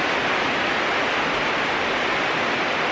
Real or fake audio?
real